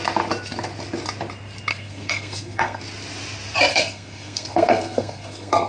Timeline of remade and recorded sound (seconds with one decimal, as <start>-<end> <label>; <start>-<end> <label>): 0.0-1.7 recorded; 1.7-2.8 remade; 2.8-3.7 recorded; 3.7-5.7 remade